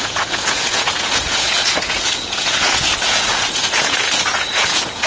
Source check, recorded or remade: remade